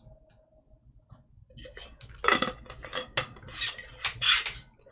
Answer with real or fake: real